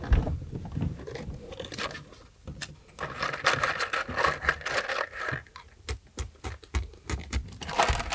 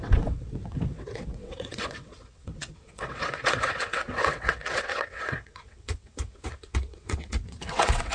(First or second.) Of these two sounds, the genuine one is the first